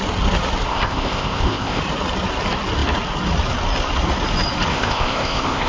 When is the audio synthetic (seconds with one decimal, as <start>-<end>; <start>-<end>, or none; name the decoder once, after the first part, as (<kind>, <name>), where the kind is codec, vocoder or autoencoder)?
0.7-1.8 (codec, ZipCodec); 4.7-5.7